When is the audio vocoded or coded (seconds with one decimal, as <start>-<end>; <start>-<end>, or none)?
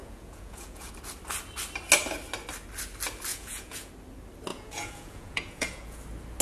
0.0-0.9; 3.3-3.9; 4.5-6.0